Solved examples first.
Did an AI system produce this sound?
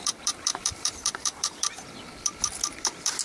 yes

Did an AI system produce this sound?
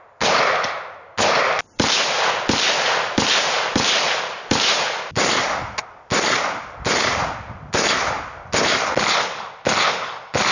no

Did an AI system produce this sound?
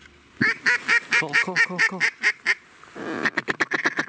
no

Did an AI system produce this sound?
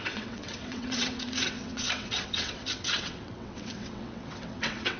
yes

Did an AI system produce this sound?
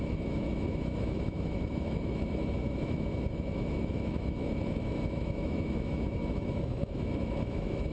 yes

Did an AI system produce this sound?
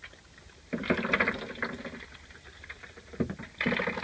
no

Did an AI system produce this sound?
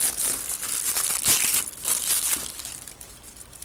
no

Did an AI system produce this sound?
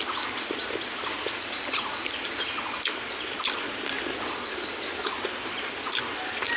no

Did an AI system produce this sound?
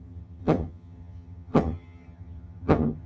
yes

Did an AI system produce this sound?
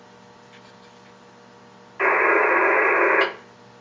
no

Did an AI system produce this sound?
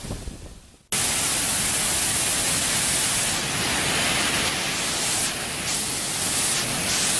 no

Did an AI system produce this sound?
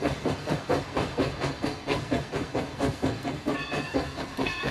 yes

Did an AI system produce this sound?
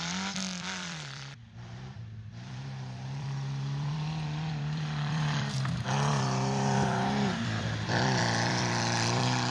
yes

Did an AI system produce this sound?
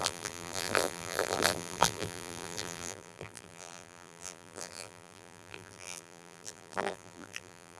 yes